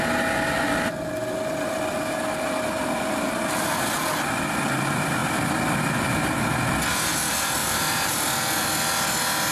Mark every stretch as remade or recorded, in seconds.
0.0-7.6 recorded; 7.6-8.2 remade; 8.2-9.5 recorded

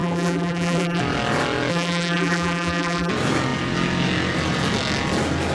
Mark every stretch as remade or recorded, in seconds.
0.0-1.0 remade; 1.0-1.7 recorded; 1.7-3.1 remade; 3.1-5.5 recorded

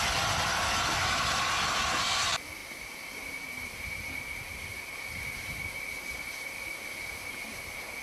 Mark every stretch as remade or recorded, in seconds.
0.0-2.6 recorded; 2.6-4.0 remade; 4.0-4.7 recorded; 4.7-5.5 remade; 5.5-8.0 recorded

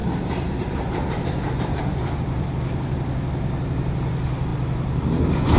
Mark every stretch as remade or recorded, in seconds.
0.0-1.8 remade; 1.8-5.6 recorded